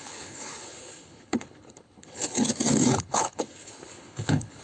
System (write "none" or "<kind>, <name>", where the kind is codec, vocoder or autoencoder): codec, HILCodec